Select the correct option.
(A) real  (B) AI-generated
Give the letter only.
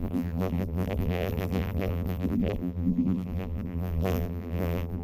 B